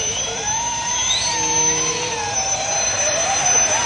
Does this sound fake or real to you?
real